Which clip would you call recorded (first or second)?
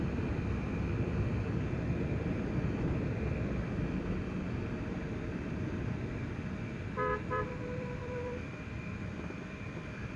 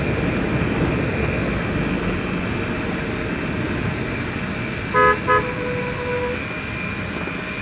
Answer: second